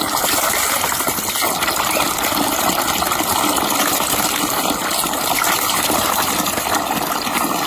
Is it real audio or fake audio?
real